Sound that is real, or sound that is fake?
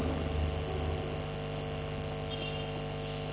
real